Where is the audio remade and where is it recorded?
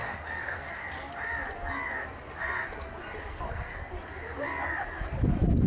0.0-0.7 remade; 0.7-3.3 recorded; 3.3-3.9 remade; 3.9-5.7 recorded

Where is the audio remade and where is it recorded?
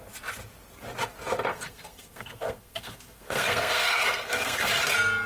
0.0-1.5 recorded; 1.5-4.7 remade; 4.7-5.3 recorded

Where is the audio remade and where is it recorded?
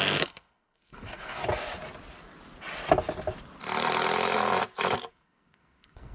0.0-1.4 remade; 1.4-5.1 recorded; 5.1-6.1 remade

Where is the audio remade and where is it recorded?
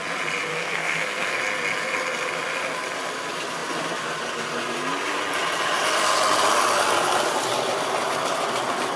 0.0-0.5 recorded; 0.5-1.4 remade; 1.4-9.0 recorded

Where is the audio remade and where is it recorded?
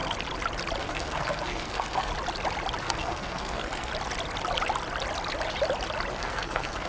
0.0-0.8 recorded; 0.8-2.1 remade; 2.1-2.8 recorded; 2.8-3.9 remade; 3.9-6.1 recorded; 6.1-6.9 remade